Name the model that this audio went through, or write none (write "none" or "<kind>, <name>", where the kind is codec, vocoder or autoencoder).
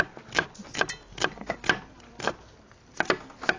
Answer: none